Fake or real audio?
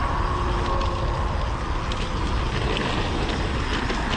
real